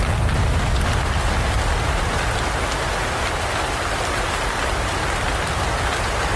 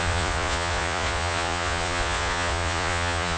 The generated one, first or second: second